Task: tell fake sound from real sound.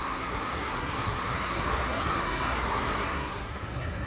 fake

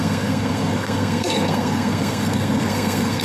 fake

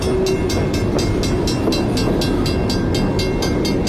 real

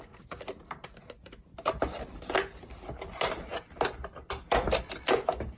real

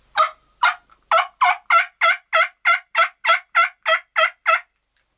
real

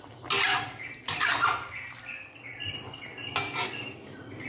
real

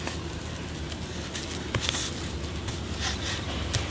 real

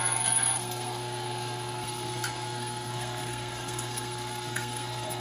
fake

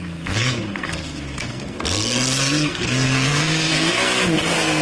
fake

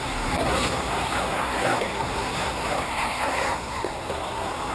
fake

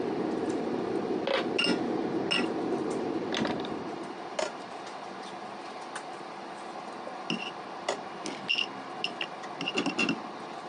real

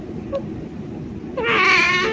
real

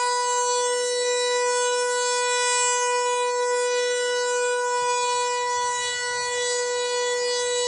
real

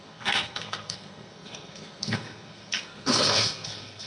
fake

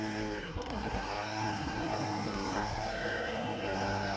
fake